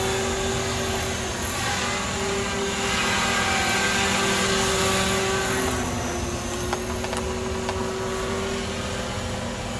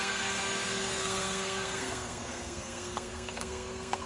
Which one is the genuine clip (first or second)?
first